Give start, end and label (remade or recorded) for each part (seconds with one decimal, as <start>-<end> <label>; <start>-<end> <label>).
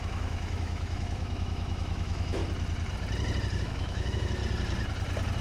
0.0-2.4 remade; 2.4-3.6 recorded; 3.6-4.4 remade; 4.4-5.4 recorded